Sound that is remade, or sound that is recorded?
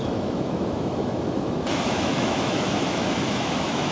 remade